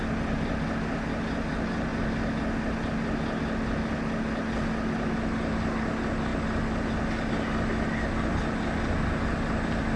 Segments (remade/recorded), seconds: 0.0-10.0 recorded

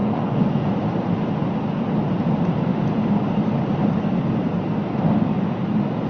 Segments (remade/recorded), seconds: 0.0-0.7 remade; 0.7-6.1 recorded

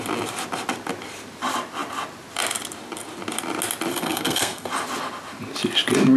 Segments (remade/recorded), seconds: 0.0-3.9 recorded; 3.9-4.7 remade; 4.7-6.2 recorded

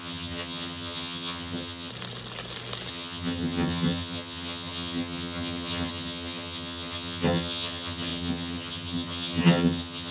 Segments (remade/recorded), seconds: 0.0-1.9 remade; 1.9-2.9 recorded; 2.9-10.1 remade

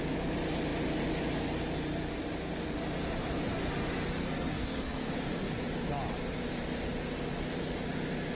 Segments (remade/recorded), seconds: 0.0-4.2 recorded; 4.2-5.1 remade; 5.1-8.3 recorded

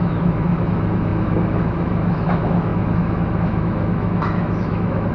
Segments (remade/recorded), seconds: 0.0-5.1 remade

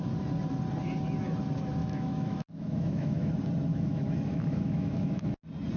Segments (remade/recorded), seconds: 0.0-1.8 recorded; 1.8-3.3 remade; 3.3-3.7 recorded; 3.7-5.3 remade; 5.3-5.8 recorded